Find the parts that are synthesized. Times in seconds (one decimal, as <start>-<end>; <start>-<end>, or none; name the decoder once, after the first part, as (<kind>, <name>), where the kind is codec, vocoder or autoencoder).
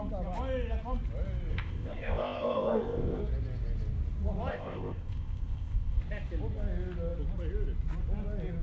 1.5-3.2 (codec, ZipCodec); 4.5-6.0